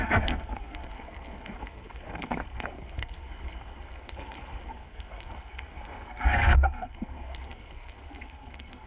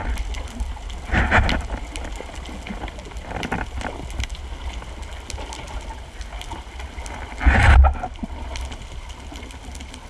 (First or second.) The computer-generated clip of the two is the first